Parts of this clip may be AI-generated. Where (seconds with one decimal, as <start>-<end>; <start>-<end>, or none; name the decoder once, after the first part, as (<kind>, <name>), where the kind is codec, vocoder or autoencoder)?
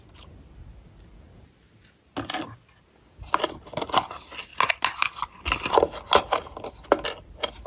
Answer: none